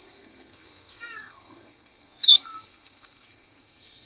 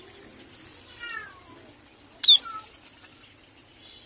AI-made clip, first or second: first